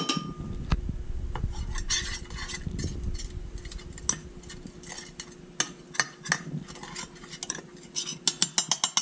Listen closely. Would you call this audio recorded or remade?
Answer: recorded